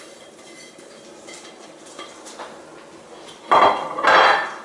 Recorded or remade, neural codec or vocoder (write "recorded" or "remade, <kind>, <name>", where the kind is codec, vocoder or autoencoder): recorded